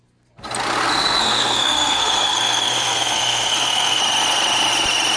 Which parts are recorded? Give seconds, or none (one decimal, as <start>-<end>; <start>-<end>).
0.0-0.9; 4.0-5.2